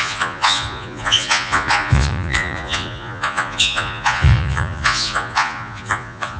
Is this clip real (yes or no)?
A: no